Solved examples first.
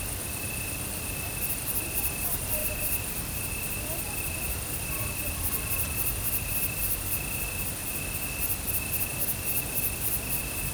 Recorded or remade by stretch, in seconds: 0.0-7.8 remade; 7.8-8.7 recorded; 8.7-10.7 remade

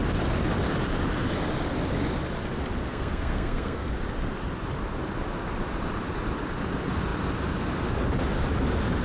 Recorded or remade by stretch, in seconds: 0.0-2.8 recorded; 2.8-3.9 remade; 3.9-9.0 recorded

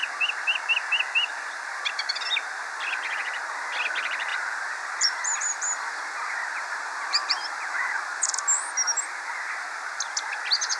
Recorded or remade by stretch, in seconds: 0.0-4.3 recorded; 4.3-8.3 remade; 8.3-10.8 recorded

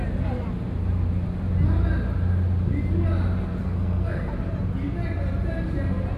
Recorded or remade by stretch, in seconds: 0.0-3.6 recorded; 3.6-4.3 remade; 4.3-6.2 recorded

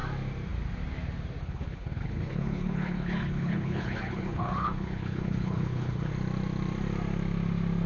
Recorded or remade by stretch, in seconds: 0.0-1.4 recorded; 1.4-6.1 remade; 6.1-7.9 recorded

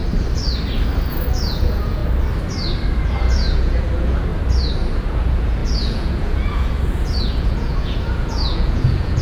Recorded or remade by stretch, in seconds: 0.0-1.1 recorded; 1.1-2.0 remade; 2.0-3.0 recorded; 3.0-4.3 remade; 4.3-5.0 recorded; 5.0-9.2 remade

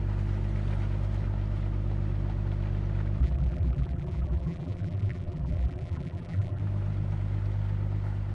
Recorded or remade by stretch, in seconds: 0.0-3.2 recorded; 3.2-6.6 remade; 6.6-8.3 recorded